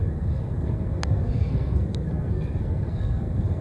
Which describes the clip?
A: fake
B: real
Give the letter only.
A